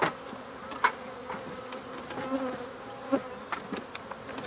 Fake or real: real